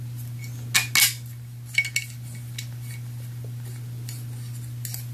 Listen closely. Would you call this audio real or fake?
real